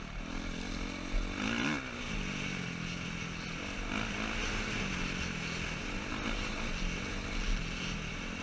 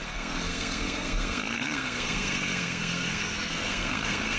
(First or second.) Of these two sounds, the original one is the first